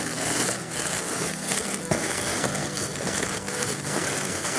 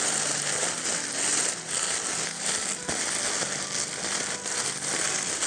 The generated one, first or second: first